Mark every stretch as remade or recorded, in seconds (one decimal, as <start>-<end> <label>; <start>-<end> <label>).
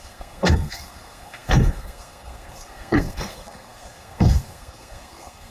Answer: 0.0-5.5 remade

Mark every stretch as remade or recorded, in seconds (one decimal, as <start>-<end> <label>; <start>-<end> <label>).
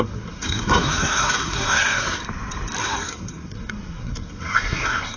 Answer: 0.0-2.2 remade; 2.2-2.8 recorded; 2.8-5.2 remade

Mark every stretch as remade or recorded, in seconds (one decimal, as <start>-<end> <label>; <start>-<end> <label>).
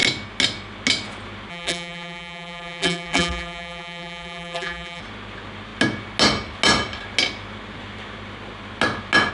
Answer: 0.0-1.5 recorded; 1.5-5.0 remade; 5.0-9.3 recorded